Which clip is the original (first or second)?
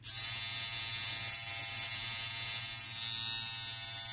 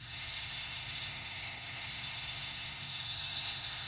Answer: first